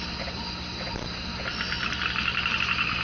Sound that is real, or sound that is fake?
real